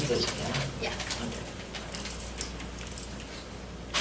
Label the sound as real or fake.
real